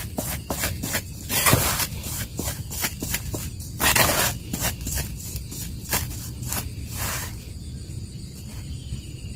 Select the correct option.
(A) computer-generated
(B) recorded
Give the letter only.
B